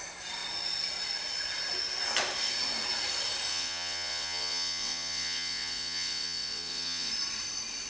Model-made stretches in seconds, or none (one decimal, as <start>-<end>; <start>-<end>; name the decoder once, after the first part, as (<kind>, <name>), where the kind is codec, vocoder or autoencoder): 3.5-7.1 (vocoder, WaveNeXt)